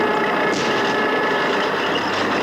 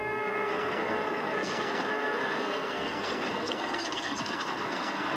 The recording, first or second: first